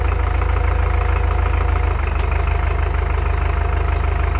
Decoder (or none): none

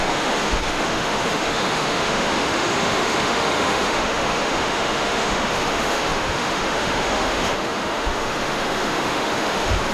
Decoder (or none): autoencoder, DAC-VAE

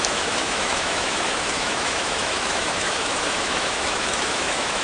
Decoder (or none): autoencoder, DAC-VAE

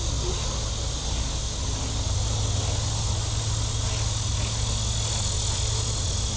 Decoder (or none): none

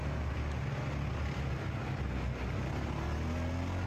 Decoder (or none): none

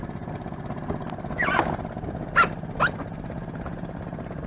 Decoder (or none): none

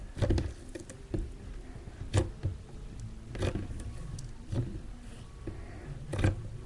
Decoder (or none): none